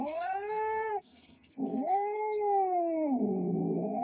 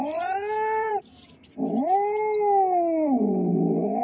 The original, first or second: second